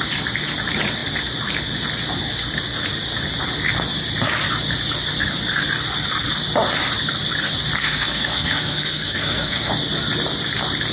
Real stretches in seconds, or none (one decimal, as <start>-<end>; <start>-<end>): 0.0-7.8; 9.7-10.9